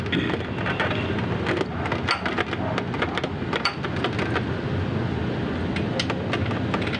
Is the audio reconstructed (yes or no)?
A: no